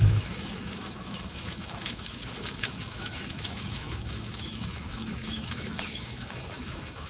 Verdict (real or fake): fake